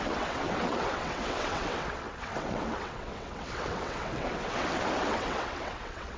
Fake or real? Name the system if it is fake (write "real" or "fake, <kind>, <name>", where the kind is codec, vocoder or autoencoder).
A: fake, vocoder, WaveNeXt